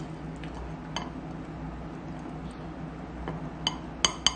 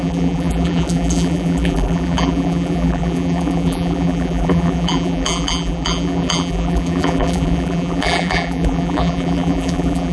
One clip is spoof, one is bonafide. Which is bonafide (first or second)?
first